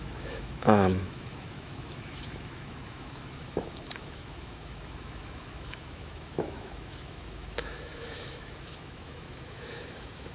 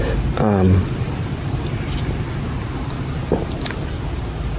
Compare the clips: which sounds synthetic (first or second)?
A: first